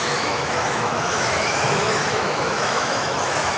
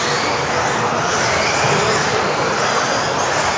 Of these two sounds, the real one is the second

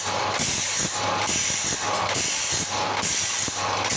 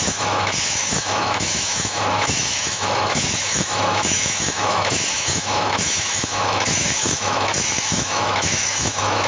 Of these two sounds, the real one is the first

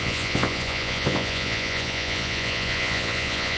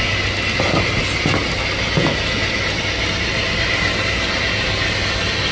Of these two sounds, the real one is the second